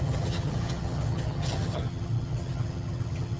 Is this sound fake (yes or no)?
yes